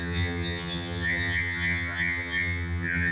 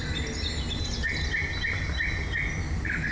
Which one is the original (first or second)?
second